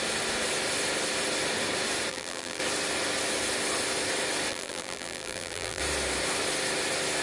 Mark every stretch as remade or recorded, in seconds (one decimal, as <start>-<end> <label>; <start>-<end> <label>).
0.0-2.1 recorded; 2.1-2.6 remade; 2.6-4.5 recorded; 4.5-5.8 remade; 5.8-7.2 recorded